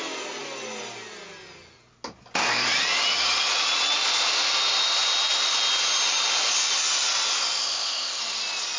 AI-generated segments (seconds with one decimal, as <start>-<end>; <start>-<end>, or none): 7.6-8.2